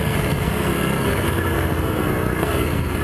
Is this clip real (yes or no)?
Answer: no